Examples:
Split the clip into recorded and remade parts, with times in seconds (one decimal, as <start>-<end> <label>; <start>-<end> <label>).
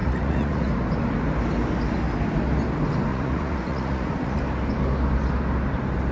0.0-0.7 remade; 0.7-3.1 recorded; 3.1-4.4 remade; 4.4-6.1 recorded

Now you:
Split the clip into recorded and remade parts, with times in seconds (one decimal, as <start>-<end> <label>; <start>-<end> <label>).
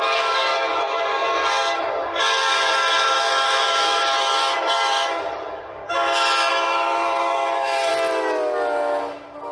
0.0-5.8 remade; 5.8-6.5 recorded; 6.5-7.9 remade; 7.9-9.5 recorded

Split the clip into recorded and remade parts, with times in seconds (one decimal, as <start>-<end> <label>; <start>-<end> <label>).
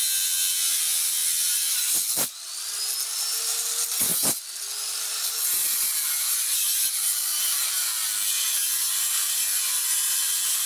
0.0-10.7 recorded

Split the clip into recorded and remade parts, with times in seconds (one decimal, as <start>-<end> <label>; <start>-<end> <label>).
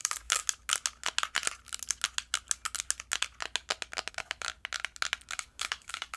0.0-0.4 remade; 0.4-4.1 recorded; 4.1-4.5 remade; 4.5-5.3 recorded; 5.3-6.2 remade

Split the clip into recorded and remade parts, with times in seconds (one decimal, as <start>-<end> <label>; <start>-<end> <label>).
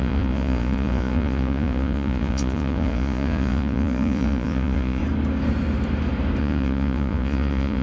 0.0-5.0 remade; 5.0-6.4 recorded; 6.4-7.8 remade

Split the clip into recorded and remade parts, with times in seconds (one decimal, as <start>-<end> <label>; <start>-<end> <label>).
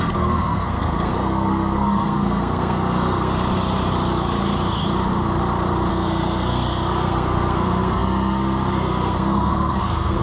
0.0-3.3 remade; 3.3-5.9 recorded; 5.9-10.2 remade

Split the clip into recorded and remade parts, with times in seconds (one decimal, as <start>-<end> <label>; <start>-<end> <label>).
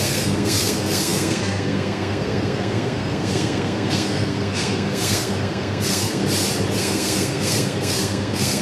0.0-6.2 remade; 6.2-6.8 recorded; 6.8-8.6 remade